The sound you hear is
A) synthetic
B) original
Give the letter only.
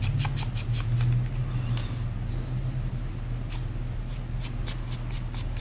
B